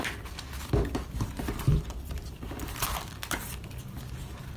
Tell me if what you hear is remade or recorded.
recorded